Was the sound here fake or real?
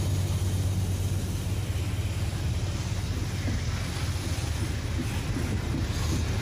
real